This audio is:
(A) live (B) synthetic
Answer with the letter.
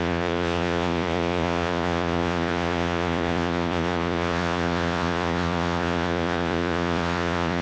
B